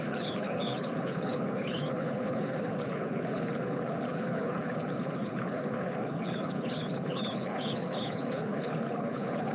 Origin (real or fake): fake